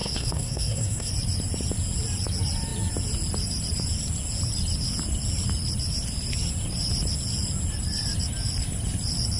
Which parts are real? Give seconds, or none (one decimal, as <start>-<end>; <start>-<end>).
1.1-9.4